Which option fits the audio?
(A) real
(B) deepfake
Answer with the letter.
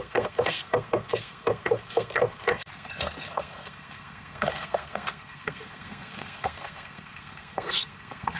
B